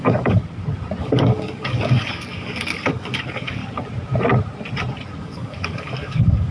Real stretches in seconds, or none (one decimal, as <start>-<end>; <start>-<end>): 0.4-1.0; 3.6-5.2